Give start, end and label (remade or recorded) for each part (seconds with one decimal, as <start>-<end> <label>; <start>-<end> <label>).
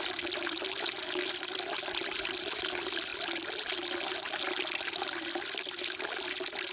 0.0-6.7 recorded